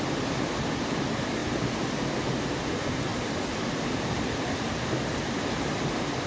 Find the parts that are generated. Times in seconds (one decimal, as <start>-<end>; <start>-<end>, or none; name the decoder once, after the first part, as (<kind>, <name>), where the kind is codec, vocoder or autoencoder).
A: 3.1-5.8 (vocoder, BigVGAN v2)